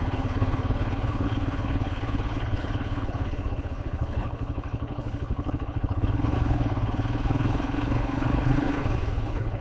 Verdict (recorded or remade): remade